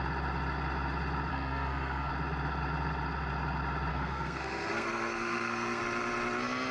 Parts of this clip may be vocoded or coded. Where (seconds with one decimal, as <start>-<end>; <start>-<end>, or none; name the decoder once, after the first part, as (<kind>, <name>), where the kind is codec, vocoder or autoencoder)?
1.3-2.1 (codec, SNAC); 3.9-5.8